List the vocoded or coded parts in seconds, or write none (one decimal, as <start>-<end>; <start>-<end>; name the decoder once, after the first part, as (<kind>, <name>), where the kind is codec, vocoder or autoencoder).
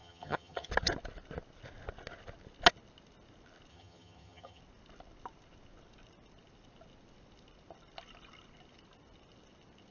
0.0-0.7 (vocoder, HiFi-GAN); 3.7-4.6